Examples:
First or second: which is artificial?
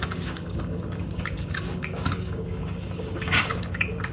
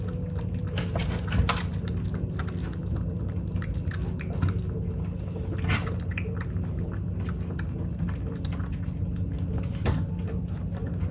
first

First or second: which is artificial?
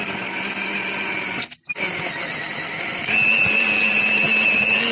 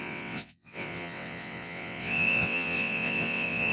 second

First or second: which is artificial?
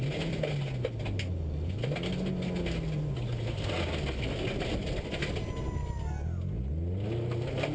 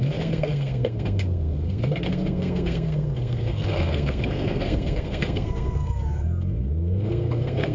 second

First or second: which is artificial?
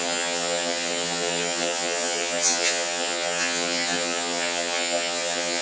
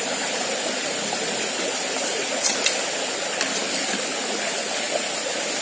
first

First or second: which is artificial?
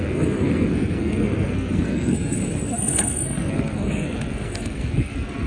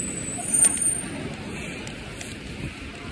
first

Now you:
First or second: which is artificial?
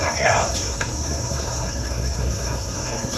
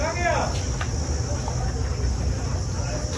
first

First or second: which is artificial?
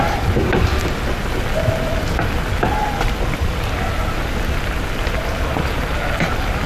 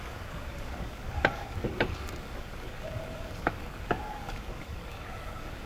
second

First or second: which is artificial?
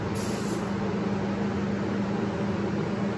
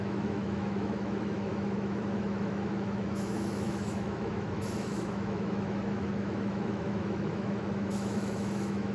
second